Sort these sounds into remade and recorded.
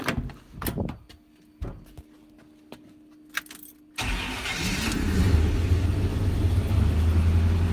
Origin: recorded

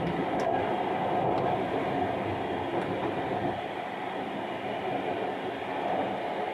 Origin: recorded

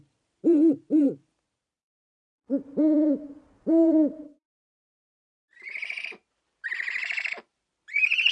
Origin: remade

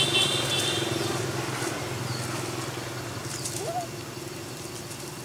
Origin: recorded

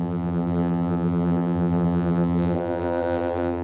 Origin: remade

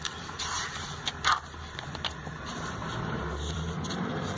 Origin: remade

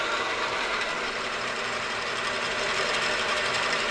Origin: remade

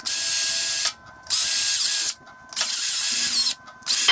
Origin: recorded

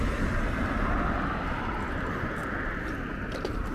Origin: recorded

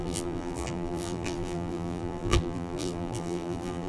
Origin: remade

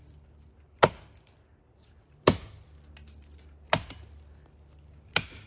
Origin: recorded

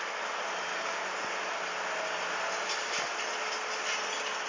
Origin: recorded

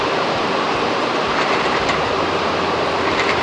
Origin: remade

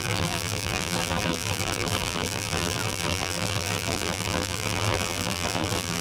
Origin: remade